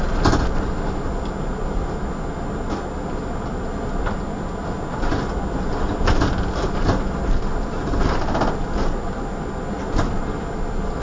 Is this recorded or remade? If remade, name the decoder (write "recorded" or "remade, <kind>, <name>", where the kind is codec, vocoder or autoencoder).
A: recorded